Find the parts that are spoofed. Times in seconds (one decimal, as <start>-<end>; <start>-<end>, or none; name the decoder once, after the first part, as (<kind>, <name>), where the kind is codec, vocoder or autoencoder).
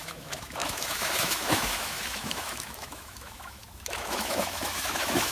0.0-5.3 (autoencoder, DAC-VAE)